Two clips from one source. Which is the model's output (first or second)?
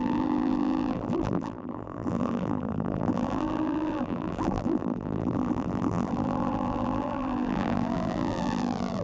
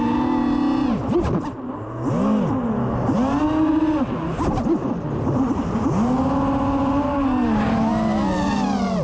first